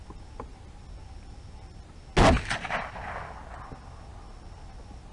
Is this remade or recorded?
recorded